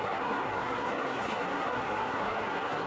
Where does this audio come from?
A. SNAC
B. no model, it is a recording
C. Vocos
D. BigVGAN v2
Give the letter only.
A